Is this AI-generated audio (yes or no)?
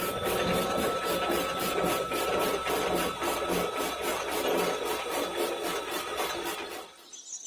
no